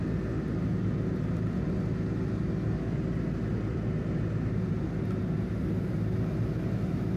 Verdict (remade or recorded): recorded